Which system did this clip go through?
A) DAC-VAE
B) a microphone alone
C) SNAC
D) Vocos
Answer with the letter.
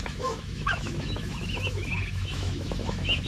A